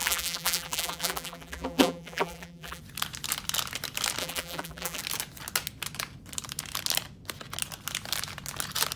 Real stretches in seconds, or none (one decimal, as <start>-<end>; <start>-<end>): 2.8-4.2; 5.0-9.0